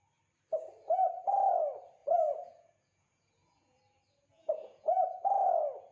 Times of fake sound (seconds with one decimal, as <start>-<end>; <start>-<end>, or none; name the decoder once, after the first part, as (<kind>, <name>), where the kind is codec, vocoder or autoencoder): 2.0-3.8 (vocoder, Vocos); 4.3-4.9